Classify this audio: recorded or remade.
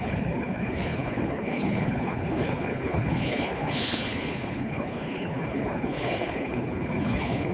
remade